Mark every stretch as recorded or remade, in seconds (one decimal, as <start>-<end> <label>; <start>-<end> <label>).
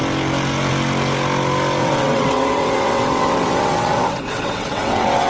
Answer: 0.0-1.8 recorded; 1.8-5.3 remade